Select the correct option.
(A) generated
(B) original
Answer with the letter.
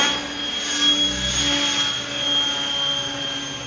B